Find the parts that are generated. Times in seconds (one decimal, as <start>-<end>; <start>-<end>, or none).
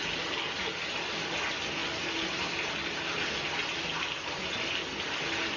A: none